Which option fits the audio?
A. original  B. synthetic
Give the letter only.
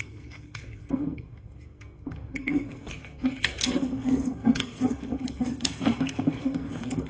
B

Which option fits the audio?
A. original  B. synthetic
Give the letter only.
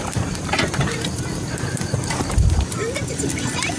A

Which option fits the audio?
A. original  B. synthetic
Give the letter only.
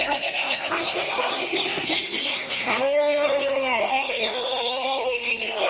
B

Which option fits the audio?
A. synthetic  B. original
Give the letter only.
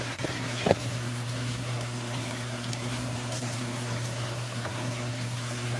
A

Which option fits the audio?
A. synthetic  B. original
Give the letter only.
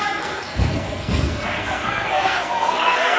A